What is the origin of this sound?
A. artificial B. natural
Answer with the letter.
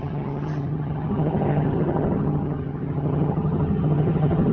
A